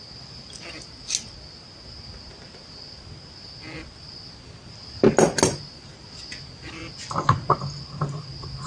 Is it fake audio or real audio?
real